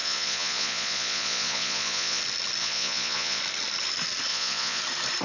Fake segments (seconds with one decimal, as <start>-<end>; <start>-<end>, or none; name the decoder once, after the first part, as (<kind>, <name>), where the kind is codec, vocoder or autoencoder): 0.0-2.2 (vocoder, Vocos); 2.6-3.4; 4.3-4.8